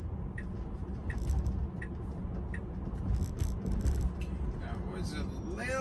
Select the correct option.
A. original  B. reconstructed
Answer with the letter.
A